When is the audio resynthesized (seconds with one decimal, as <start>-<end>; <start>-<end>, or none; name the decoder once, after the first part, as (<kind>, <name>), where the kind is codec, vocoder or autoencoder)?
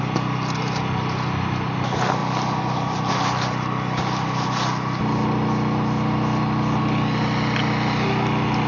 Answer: none